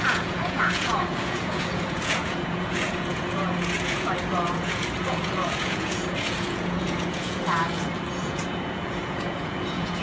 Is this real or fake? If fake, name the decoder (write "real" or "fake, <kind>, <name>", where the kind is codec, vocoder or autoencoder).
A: fake, vocoder, Vocos